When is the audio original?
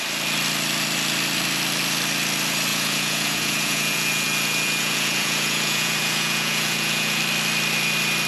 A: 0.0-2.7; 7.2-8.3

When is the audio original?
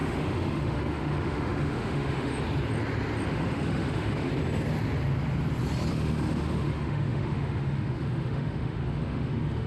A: 2.3-3.3; 4.3-5.9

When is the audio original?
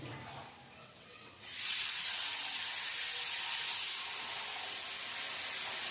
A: 0.0-0.8; 2.4-5.9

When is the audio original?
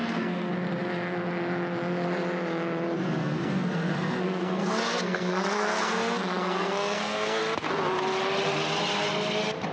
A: 0.5-3.2; 7.4-9.7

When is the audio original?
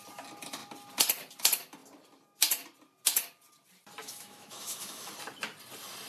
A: 0.0-4.0; 5.1-6.1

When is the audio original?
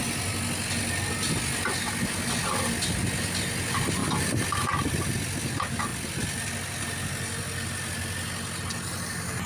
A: 0.0-4.0; 4.9-9.5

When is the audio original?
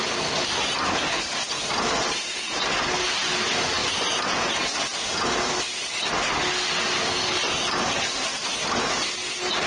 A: 0.0-9.7